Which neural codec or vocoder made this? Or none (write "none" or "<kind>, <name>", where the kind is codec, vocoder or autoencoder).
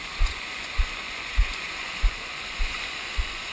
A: vocoder, Vocos